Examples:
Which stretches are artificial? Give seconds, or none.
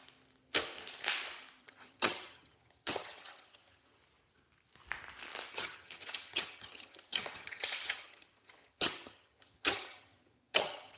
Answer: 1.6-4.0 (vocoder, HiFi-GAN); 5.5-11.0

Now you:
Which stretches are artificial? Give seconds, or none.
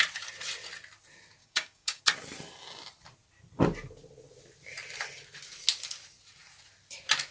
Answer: 1.4-2.0 (codec, DAC)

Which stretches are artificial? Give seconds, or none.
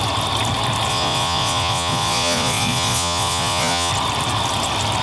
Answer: 0.9-3.9 (vocoder, Vocos)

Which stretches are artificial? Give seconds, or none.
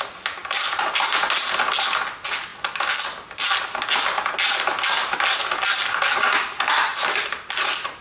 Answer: 6.9-8.0 (vocoder, BigVGAN v2)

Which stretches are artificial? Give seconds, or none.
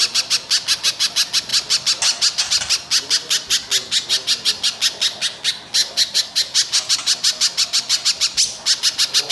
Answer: none